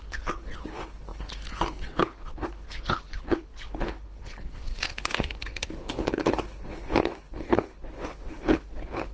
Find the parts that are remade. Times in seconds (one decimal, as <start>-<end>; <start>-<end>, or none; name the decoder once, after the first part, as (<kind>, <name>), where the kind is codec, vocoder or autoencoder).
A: 0.0-9.1 (codec, HILCodec)